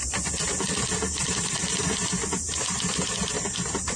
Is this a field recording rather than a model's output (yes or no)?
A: yes